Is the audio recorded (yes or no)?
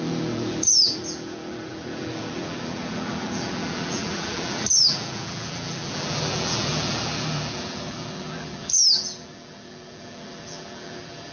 no